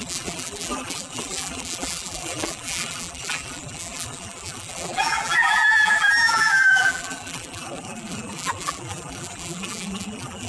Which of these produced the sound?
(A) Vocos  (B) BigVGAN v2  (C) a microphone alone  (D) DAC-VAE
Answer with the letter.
B